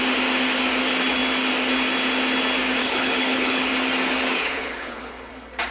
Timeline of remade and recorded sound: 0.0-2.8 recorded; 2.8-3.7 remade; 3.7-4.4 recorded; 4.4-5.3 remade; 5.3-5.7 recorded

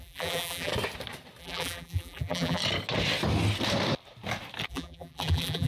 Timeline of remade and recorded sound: 0.0-0.7 remade; 0.7-1.4 recorded; 1.4-2.6 remade; 2.6-4.7 recorded; 4.7-5.7 remade

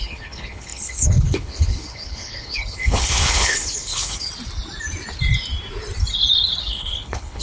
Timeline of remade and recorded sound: 0.0-4.3 remade; 4.3-6.6 recorded; 6.6-7.4 remade

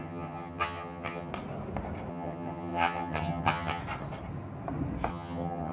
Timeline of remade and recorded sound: 0.0-1.3 remade; 1.3-2.1 recorded; 2.1-3.8 remade; 3.8-5.1 recorded; 5.1-5.7 remade

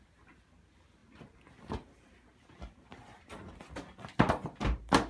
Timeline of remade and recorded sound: 0.0-5.1 recorded

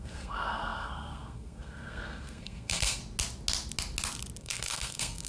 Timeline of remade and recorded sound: 0.0-3.0 remade; 3.0-4.4 recorded; 4.4-5.3 remade

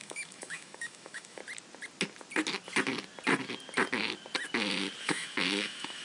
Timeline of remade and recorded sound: 0.0-1.4 remade; 1.4-5.0 recorded; 5.0-6.0 remade